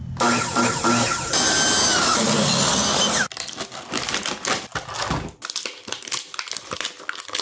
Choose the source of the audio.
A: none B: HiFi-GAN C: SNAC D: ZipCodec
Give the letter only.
A